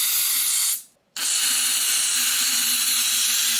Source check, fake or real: real